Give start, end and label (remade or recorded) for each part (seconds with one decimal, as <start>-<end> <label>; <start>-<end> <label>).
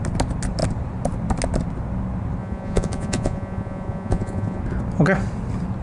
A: 0.0-2.4 recorded; 2.4-4.6 remade; 4.6-5.8 recorded